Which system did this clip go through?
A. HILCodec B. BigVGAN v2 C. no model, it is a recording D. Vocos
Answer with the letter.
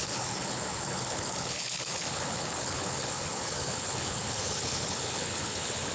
A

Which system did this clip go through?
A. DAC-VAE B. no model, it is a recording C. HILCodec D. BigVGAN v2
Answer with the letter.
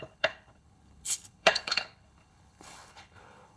C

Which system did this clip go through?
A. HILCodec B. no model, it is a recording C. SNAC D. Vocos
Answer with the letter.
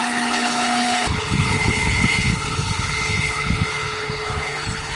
A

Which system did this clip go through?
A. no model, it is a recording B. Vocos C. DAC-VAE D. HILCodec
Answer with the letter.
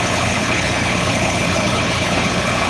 D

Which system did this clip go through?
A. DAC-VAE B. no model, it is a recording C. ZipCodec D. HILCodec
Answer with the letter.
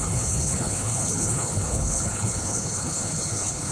D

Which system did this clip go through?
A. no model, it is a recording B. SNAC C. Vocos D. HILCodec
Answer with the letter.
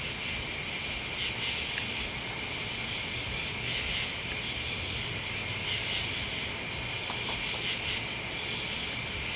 A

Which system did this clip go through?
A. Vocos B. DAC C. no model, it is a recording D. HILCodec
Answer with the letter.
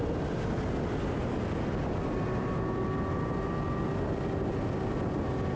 C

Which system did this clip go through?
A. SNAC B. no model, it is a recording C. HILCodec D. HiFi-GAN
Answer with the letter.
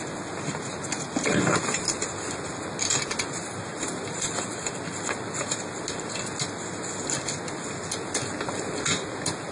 B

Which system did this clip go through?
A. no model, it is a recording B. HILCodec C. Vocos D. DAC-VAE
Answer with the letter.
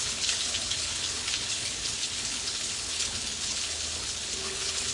B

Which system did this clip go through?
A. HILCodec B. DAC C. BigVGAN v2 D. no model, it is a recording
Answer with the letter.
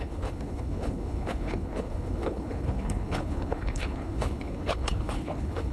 A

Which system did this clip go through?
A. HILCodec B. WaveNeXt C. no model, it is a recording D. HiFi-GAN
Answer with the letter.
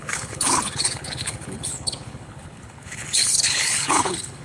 A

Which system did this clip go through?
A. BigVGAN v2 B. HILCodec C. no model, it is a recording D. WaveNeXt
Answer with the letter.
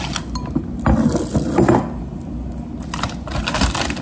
C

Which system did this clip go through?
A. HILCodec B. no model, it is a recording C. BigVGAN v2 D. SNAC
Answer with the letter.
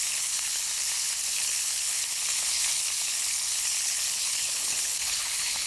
A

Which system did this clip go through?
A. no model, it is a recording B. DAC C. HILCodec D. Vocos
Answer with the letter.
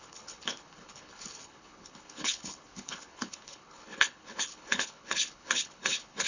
C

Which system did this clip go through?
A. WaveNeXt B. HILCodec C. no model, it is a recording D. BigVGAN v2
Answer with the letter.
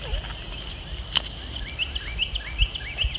C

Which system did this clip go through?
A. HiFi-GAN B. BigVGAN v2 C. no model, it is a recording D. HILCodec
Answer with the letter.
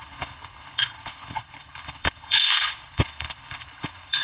D